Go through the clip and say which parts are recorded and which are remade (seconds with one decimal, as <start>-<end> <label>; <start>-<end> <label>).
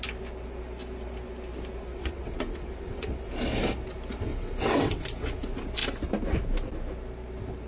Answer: 0.0-1.9 recorded; 1.9-3.3 remade; 3.3-4.3 recorded; 4.3-5.0 remade; 5.0-7.7 recorded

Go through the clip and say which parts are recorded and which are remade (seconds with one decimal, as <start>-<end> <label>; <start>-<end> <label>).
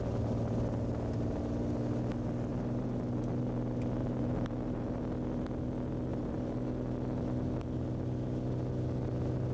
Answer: 0.0-2.5 recorded; 2.5-3.0 remade; 3.0-4.0 recorded; 4.0-5.0 remade; 5.0-6.1 recorded; 6.1-6.7 remade; 6.7-9.5 recorded